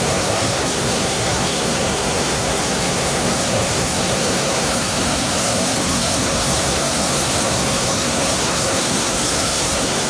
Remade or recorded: remade